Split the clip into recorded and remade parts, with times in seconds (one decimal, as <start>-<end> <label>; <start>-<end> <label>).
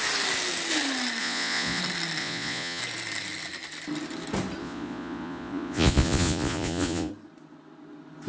0.0-1.2 recorded; 1.2-1.8 remade; 1.8-2.2 recorded; 2.2-2.8 remade; 2.8-4.6 recorded; 4.6-7.1 remade; 7.1-8.3 recorded